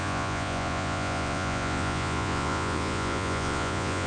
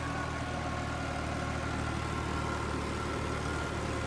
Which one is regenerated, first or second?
first